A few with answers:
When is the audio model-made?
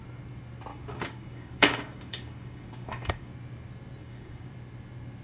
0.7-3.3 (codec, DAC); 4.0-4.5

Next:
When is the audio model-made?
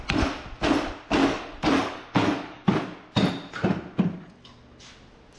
1.2-2.7 (codec, DAC)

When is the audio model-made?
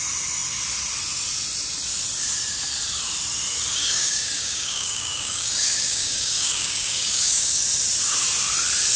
3.8-7.6 (codec, DAC)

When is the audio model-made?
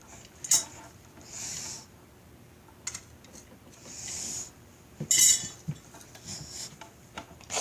none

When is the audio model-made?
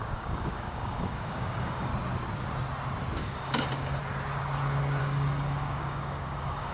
0.0-1.9 (codec, DAC); 3.2-4.0; 5.0-6.7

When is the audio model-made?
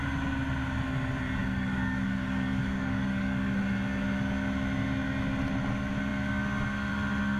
1.4-3.6 (codec, DAC)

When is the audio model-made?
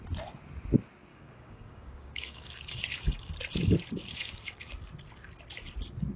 1.1-3.3 (codec, DAC); 4.0-4.7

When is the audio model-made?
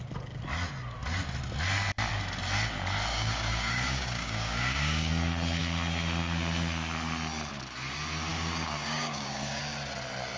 3.1-5.1 (codec, DAC); 8.3-9.6